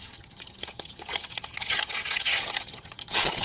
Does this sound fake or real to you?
fake